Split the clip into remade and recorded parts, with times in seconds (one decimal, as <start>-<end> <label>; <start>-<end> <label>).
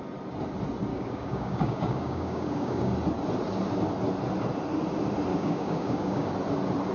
0.0-0.9 recorded; 0.9-2.9 remade; 2.9-5.3 recorded; 5.3-6.3 remade; 6.3-6.9 recorded